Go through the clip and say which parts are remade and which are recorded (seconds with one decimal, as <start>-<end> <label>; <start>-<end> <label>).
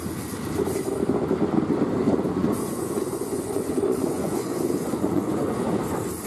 0.0-2.0 recorded; 2.0-5.8 remade; 5.8-6.3 recorded